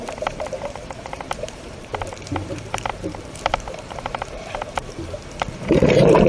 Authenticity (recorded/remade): remade